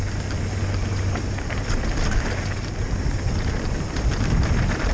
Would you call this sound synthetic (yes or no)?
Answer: no